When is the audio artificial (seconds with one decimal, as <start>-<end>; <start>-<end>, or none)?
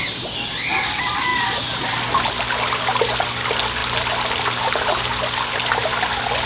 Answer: 3.8-5.0; 5.8-6.5